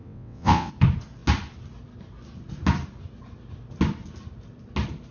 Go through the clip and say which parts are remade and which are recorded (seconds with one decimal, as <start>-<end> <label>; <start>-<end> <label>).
0.0-0.7 remade; 0.7-5.1 recorded